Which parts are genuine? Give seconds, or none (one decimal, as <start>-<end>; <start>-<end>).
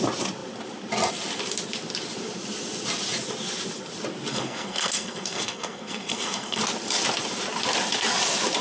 0.0-4.3; 6.6-8.6